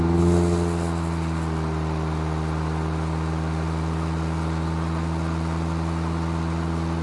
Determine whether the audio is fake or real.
real